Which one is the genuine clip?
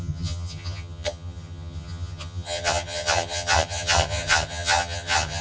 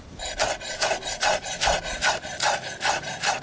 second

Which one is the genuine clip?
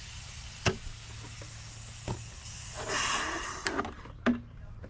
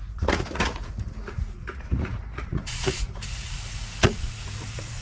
first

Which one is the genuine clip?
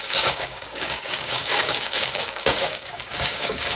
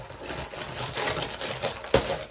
second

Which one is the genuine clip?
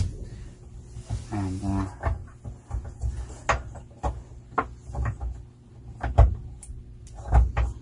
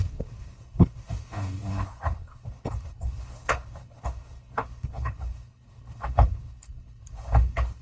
first